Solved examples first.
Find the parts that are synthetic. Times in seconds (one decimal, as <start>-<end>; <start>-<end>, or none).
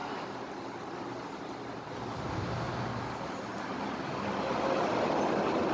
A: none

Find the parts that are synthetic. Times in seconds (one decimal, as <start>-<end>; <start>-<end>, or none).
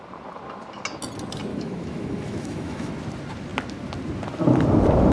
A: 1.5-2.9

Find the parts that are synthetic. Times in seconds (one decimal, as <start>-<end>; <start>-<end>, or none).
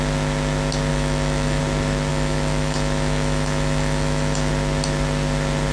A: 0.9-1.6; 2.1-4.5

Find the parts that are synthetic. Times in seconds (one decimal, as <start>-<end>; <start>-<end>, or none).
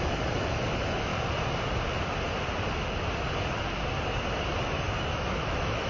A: 0.0-1.1; 4.6-5.9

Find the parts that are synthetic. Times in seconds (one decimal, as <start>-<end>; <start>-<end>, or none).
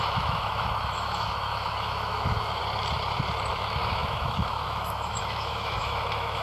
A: 0.0-2.6; 3.5-6.4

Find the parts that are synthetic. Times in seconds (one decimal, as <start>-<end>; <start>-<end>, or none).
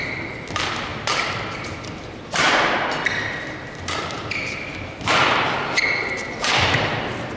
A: none